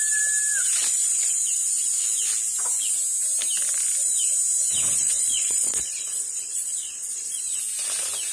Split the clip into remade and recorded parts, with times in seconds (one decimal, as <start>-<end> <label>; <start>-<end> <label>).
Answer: 0.0-5.0 recorded; 5.0-7.6 remade; 7.6-8.3 recorded